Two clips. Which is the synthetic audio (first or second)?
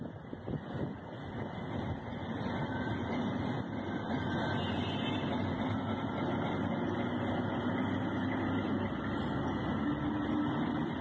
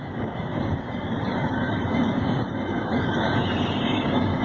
second